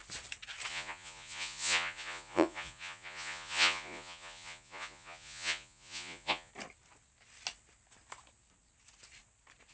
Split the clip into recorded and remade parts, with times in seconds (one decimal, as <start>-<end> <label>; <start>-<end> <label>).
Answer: 0.0-0.7 recorded; 0.7-6.5 remade; 6.5-9.7 recorded